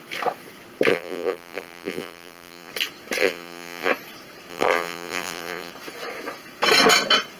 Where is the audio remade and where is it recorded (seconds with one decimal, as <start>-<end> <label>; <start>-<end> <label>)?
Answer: 0.0-0.9 recorded; 0.9-2.7 remade; 2.7-3.2 recorded; 3.2-3.9 remade; 3.9-4.5 recorded; 4.5-5.7 remade; 5.7-7.4 recorded